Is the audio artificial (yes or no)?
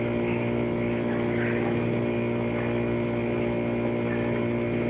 no